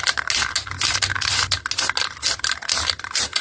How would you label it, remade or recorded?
recorded